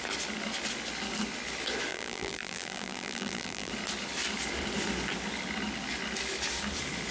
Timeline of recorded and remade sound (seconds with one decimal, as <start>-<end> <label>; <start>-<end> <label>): 0.0-1.9 recorded; 1.9-3.7 remade; 3.7-7.1 recorded